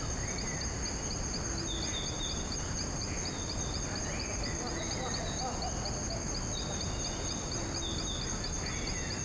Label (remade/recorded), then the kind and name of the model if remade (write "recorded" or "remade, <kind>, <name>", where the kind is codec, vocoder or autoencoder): recorded